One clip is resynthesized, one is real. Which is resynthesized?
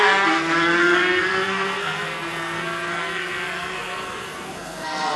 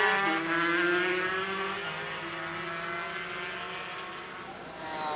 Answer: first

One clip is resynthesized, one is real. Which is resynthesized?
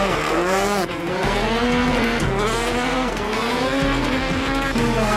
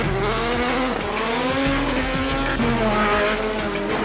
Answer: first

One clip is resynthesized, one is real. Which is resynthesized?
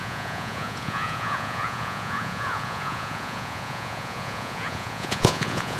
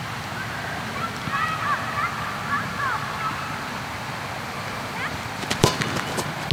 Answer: first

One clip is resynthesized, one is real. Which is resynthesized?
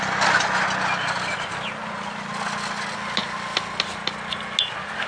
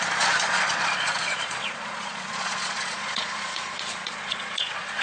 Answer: second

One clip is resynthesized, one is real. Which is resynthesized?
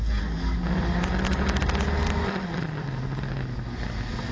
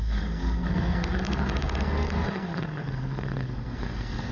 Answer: second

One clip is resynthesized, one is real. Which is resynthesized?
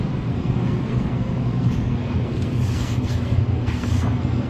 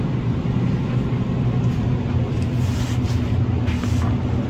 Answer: first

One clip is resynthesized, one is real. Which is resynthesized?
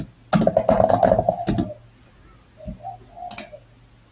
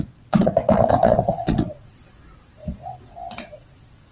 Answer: second